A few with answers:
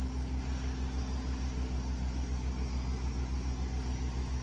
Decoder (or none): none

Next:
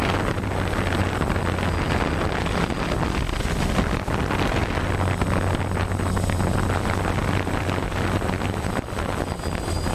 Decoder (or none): none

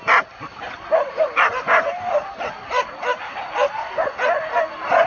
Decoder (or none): none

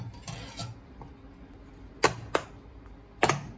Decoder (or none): none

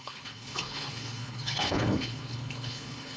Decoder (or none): codec, HILCodec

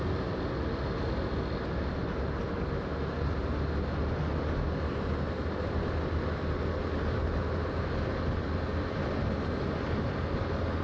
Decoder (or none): none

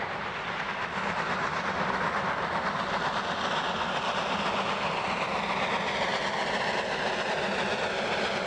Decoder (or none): none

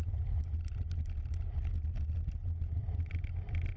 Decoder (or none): none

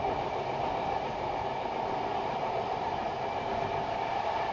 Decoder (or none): vocoder, BigVGAN v2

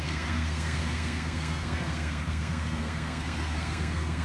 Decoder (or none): codec, SNAC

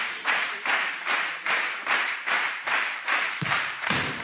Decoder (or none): vocoder, BigVGAN v2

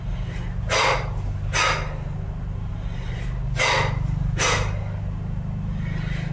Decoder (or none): none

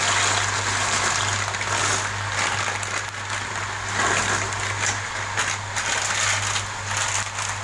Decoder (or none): none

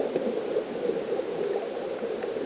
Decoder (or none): none